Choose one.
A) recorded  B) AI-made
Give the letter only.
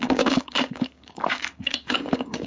B